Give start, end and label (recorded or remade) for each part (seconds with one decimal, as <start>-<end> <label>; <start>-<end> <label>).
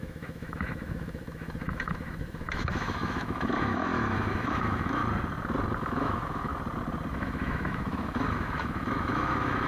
0.0-5.0 remade; 5.0-5.8 recorded; 5.8-6.5 remade; 6.5-7.1 recorded; 7.1-9.7 remade